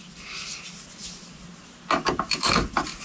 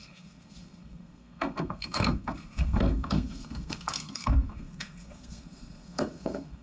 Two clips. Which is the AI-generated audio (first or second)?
second